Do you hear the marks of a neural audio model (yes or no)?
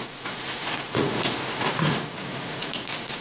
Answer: yes